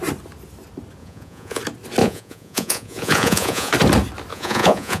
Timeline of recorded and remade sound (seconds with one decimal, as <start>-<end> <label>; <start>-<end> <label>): 0.0-1.0 recorded; 1.0-1.6 remade; 1.6-2.0 recorded; 2.0-3.7 remade; 3.7-4.3 recorded; 4.3-5.0 remade